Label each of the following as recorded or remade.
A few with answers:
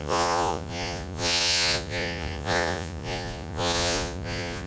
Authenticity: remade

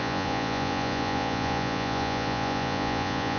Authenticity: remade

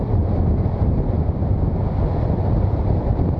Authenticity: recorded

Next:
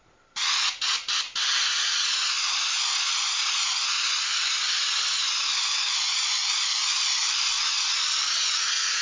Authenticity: recorded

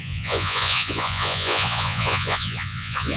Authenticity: remade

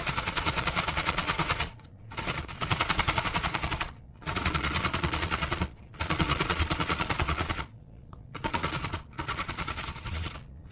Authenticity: remade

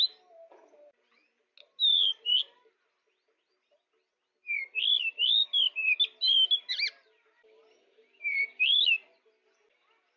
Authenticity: recorded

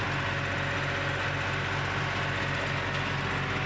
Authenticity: recorded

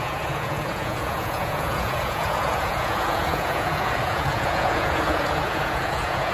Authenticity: remade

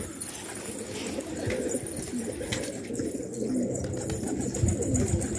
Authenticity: recorded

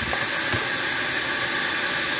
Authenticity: recorded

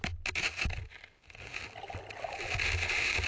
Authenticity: recorded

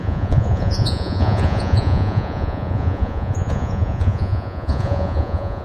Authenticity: remade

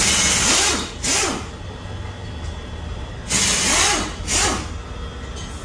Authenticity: recorded